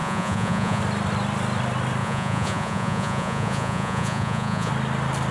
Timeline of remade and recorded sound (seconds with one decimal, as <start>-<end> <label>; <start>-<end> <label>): 0.0-0.8 remade; 0.8-2.0 recorded; 2.0-4.7 remade; 4.7-5.3 recorded